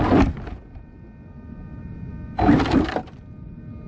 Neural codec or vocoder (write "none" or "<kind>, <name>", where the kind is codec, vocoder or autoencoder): none